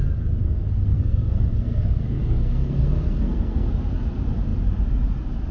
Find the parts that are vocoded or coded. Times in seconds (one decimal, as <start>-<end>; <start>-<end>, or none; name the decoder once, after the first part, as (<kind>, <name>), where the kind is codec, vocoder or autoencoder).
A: 0.4-3.7 (codec, SNAC)